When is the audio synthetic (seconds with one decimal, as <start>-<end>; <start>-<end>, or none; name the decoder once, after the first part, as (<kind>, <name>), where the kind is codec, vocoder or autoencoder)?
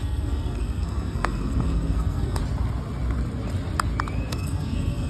0.0-2.4 (codec, SNAC); 4.3-5.1